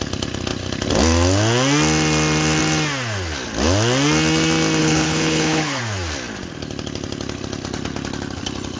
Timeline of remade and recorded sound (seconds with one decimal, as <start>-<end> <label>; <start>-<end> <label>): 0.0-4.8 recorded; 4.8-5.8 remade; 5.8-8.8 recorded